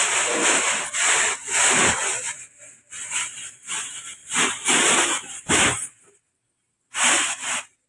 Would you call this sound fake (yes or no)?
no